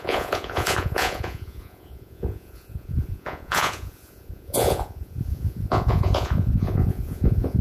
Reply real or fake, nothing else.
fake